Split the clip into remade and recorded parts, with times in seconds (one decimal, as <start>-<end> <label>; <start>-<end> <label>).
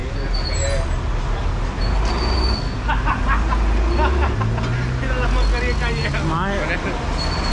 0.0-7.5 recorded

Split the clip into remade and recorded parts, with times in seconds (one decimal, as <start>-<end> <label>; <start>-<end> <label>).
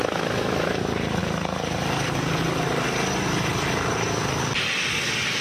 0.0-0.8 remade; 0.8-5.4 recorded